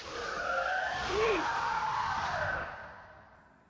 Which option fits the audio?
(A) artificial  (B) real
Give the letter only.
B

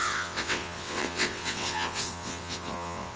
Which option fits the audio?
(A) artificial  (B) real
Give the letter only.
A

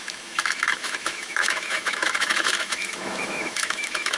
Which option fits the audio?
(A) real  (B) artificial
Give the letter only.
B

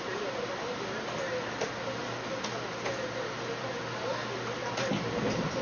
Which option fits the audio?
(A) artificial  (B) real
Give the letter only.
B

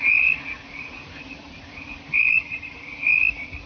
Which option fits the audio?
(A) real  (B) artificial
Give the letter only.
B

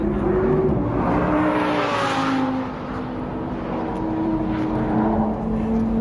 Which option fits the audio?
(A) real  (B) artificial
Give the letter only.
A